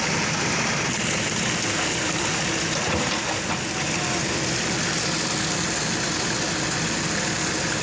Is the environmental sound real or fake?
real